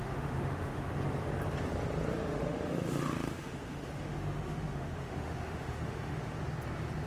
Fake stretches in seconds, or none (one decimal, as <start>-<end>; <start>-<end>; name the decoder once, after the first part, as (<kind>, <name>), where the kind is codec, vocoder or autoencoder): 0.0-0.9 (autoencoder, DAC-VAE); 2.1-6.4